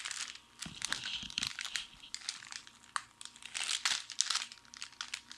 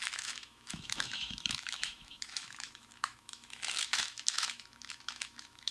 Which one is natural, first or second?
first